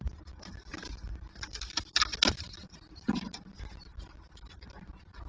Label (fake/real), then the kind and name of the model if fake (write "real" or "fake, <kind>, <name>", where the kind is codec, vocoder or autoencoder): real